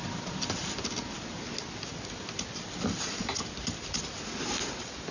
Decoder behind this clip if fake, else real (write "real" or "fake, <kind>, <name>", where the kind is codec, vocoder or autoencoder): real